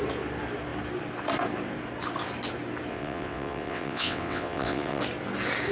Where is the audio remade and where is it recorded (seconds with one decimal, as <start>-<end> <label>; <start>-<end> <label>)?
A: 0.0-2.9 recorded; 2.9-5.0 remade; 5.0-5.7 recorded